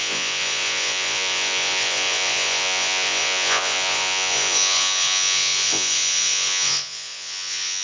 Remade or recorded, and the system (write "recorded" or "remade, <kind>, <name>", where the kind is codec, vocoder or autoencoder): remade, vocoder, Vocos